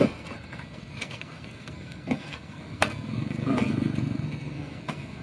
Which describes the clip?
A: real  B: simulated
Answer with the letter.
B